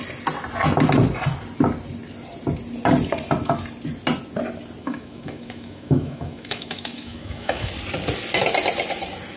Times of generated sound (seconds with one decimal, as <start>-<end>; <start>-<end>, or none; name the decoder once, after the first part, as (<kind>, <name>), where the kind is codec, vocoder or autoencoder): 4.8-7.7 (autoencoder, DAC-VAE)